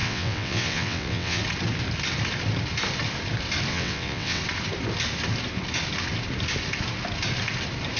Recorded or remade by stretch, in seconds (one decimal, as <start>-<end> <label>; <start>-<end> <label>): 0.0-1.4 remade; 1.4-3.7 recorded; 3.7-4.4 remade; 4.4-8.0 recorded